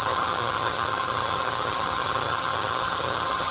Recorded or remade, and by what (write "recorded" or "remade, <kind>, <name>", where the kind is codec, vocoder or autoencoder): remade, vocoder, HiFi-GAN